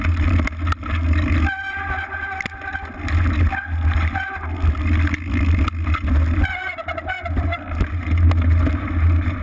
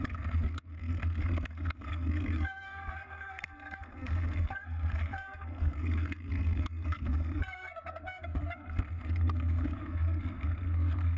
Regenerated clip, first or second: second